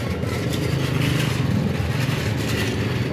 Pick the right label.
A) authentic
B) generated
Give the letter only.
A